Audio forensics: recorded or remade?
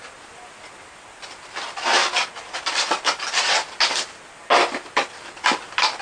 recorded